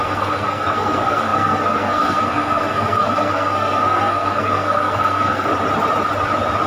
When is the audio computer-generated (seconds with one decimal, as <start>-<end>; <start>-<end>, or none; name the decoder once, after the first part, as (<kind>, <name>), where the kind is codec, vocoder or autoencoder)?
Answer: 0.0-5.5 (codec, SNAC)